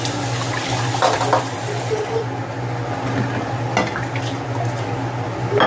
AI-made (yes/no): no